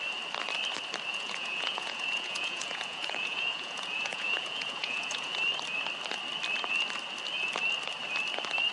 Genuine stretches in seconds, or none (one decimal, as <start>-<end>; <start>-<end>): 0.0-1.1; 5.4-8.7